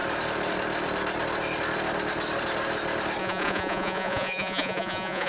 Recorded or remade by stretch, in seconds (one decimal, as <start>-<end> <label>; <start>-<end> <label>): 0.0-3.2 recorded; 3.2-5.3 remade